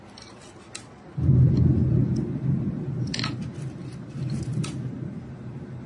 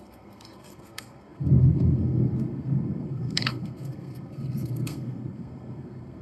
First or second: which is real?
first